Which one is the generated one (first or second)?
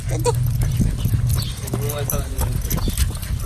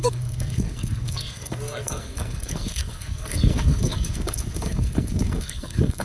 second